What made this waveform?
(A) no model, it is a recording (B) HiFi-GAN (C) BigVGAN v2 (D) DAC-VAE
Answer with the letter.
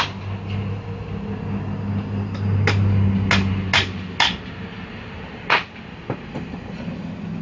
A